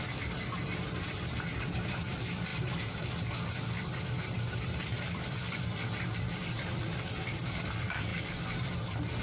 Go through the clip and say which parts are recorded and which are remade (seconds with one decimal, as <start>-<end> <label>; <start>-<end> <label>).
0.0-8.1 remade; 8.1-9.2 recorded